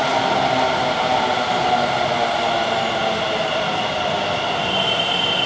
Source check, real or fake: real